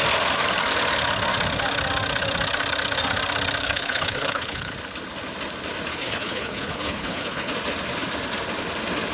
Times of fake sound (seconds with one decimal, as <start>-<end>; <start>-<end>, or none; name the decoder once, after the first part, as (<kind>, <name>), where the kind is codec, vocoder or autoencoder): 3.6-4.7 (codec, HILCodec); 5.9-7.5